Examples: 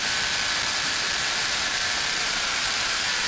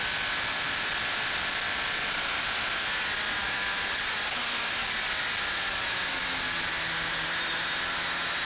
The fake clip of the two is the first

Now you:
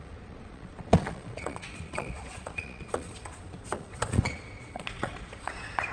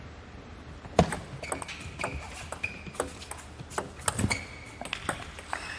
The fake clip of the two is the first